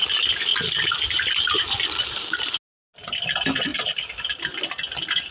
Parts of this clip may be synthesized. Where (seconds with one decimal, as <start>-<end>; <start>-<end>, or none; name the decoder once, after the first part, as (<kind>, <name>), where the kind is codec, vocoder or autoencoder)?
none